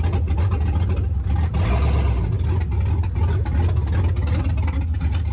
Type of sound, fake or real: real